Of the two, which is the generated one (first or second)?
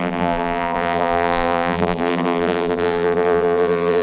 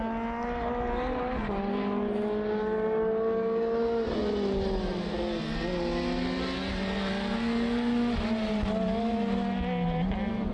first